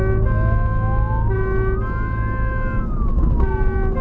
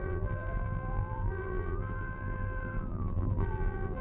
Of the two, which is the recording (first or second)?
first